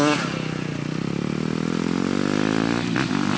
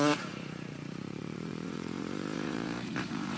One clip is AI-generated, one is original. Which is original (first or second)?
first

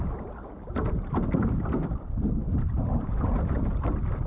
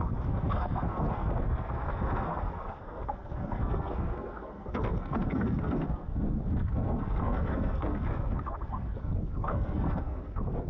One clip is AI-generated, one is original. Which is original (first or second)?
first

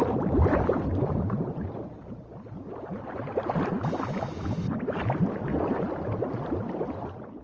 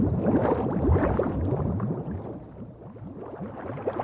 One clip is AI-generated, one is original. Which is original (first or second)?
second